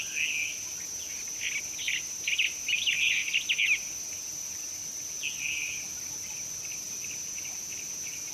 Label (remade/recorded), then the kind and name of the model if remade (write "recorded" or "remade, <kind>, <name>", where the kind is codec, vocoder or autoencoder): recorded